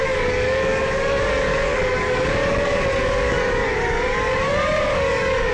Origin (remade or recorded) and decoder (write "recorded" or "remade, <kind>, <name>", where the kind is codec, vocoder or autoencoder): remade, codec, DAC